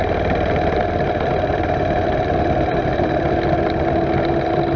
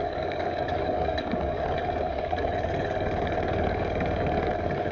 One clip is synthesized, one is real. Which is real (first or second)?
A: first